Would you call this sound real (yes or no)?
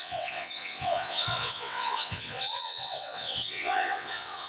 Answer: no